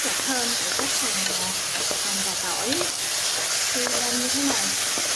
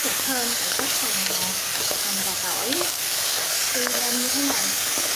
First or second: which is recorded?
first